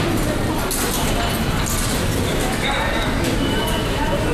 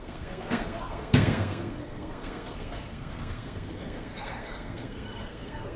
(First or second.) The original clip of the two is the first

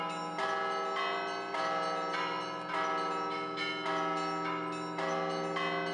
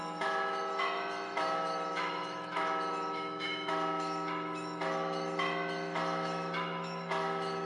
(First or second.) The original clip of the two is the first